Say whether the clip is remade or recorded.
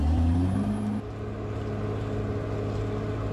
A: recorded